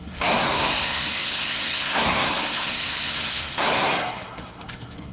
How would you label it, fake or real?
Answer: fake